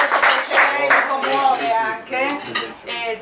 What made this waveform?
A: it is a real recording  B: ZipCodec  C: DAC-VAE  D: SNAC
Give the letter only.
A